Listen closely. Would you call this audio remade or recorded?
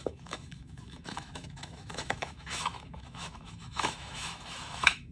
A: remade